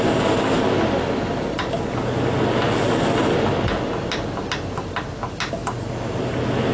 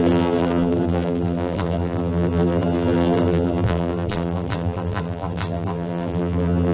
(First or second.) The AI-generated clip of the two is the second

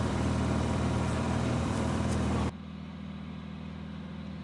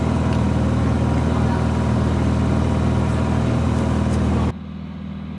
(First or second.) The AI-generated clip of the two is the first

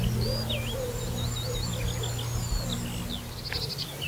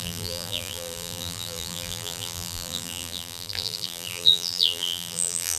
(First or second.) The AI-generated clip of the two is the second